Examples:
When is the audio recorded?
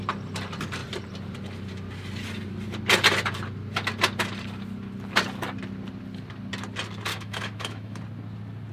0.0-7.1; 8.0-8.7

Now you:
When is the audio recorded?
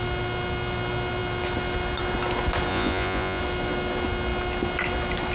0.0-2.7; 3.4-5.3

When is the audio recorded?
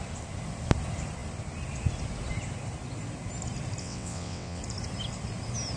0.0-3.8; 4.6-5.8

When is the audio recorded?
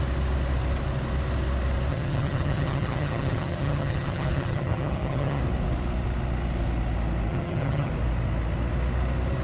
0.0-1.9; 5.4-7.3; 7.9-9.4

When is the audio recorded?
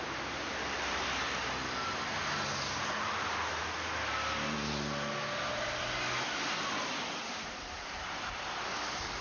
2.1-2.7; 3.6-8.4